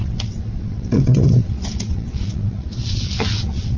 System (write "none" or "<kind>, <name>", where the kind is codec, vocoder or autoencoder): vocoder, WaveNeXt